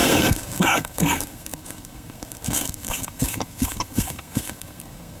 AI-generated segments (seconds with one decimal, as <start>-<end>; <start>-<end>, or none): 0.0-5.2